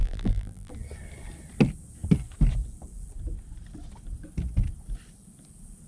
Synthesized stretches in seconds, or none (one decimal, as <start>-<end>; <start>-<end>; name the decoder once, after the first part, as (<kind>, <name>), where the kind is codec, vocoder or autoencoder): 0.0-0.7 (vocoder, BigVGAN v2)